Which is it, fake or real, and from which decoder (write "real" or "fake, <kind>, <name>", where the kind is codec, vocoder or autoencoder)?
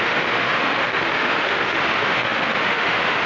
fake, autoencoder, DAC-VAE